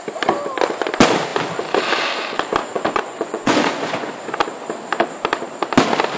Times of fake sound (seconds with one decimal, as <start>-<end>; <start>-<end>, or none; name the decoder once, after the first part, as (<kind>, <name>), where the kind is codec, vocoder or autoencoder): 2.6-4.1 (vocoder, Vocos)